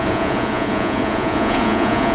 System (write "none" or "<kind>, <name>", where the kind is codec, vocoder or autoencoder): vocoder, Vocos